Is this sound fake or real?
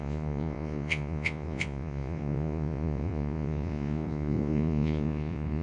fake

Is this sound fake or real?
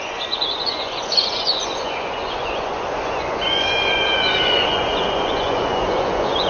fake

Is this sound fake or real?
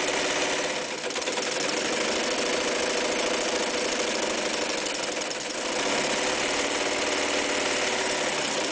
real